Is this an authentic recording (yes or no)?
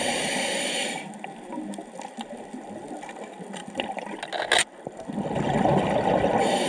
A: yes